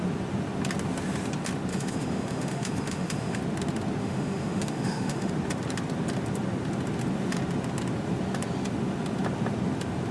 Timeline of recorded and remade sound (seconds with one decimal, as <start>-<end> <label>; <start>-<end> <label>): 0.0-1.7 recorded; 1.7-3.4 remade; 3.4-4.0 recorded; 4.0-5.3 remade; 5.3-10.1 recorded